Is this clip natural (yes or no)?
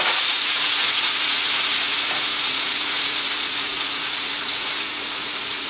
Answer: no